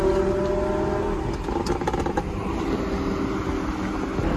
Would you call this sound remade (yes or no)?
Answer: no